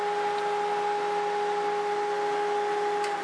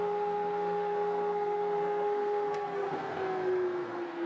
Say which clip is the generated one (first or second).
second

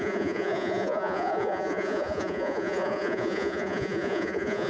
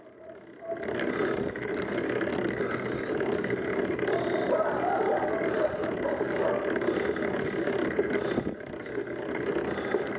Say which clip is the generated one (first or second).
first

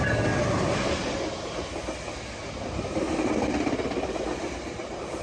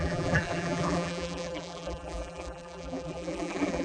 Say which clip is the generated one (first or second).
second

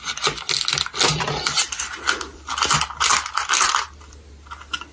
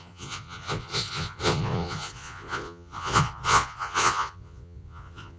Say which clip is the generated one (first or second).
second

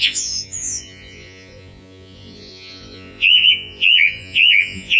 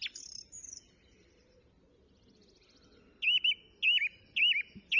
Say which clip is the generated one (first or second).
first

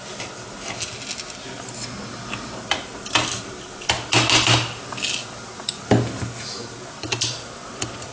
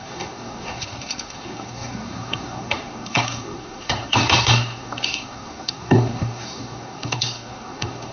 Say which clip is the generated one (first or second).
second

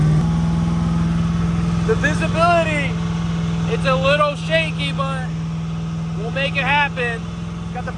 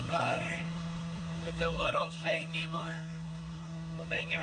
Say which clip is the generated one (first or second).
second